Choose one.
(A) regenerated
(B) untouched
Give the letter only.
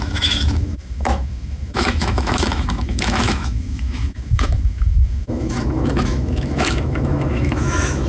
A